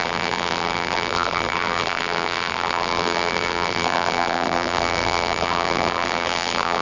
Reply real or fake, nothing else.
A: fake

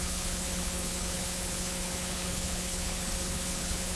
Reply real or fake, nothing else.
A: fake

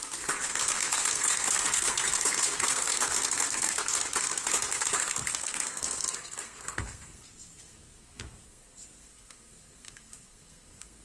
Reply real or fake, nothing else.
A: fake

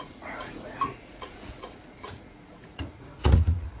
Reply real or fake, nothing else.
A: fake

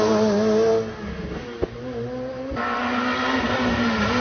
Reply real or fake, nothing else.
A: real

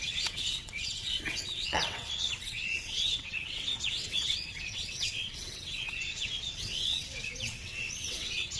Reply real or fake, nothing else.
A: fake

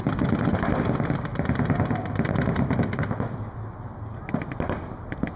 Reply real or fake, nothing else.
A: real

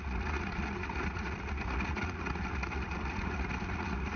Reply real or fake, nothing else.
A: fake